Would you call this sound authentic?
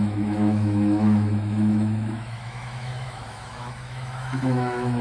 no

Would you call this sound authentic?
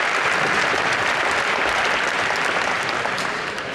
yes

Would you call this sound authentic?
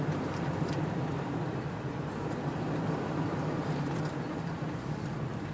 no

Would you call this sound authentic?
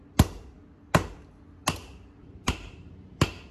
yes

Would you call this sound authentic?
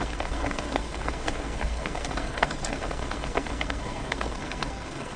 no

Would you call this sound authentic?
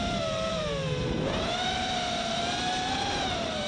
no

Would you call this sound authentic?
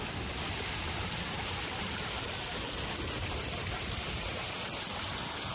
yes